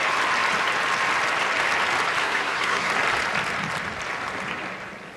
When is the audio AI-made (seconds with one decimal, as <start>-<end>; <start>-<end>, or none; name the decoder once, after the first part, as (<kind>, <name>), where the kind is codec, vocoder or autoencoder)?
2.2-2.9 (codec, SNAC)